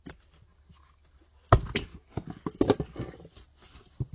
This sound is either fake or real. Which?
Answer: real